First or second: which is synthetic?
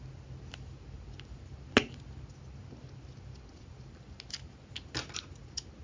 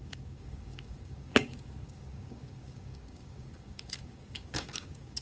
second